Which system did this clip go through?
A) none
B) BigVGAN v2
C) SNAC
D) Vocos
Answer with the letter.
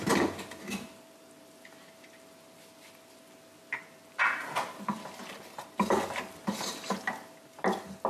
A